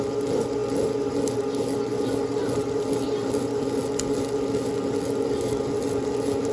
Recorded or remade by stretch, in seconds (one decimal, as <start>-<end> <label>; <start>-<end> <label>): 0.0-6.5 recorded